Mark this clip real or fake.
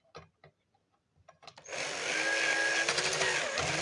real